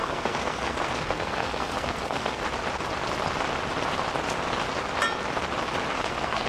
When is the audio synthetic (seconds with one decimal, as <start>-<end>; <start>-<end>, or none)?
0.0-2.4; 5.9-6.5